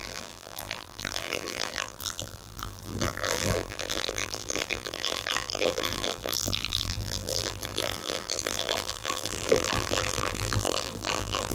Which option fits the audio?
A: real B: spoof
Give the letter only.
B